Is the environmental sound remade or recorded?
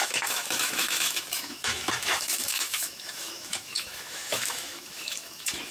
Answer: remade